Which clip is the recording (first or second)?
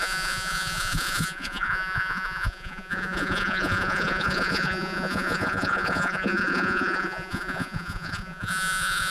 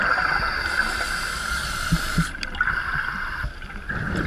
second